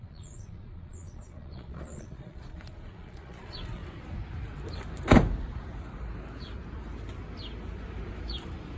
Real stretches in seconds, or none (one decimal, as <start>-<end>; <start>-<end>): 3.8-8.8